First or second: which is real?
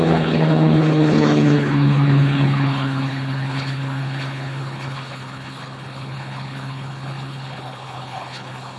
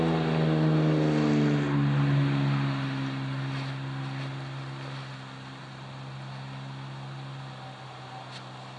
second